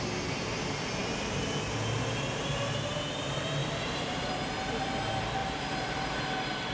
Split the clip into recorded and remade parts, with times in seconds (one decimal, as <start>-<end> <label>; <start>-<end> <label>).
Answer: 0.0-3.6 recorded; 3.6-4.3 remade; 4.3-5.4 recorded; 5.4-6.2 remade; 6.2-6.7 recorded